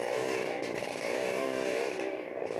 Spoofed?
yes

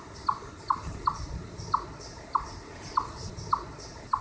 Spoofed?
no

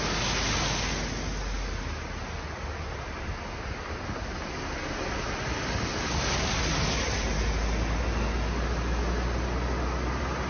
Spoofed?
no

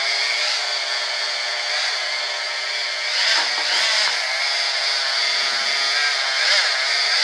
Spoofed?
no